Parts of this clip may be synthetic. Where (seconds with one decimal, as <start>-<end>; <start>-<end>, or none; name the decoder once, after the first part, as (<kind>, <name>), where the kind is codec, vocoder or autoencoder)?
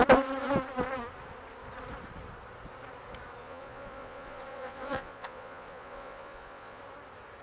3.4-6.8 (vocoder, Vocos)